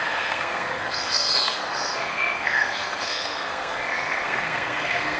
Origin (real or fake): fake